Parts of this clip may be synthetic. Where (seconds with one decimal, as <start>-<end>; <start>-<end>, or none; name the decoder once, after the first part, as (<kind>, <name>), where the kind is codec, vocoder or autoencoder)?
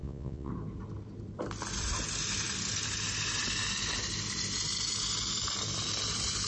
0.0-0.5 (vocoder, Vocos)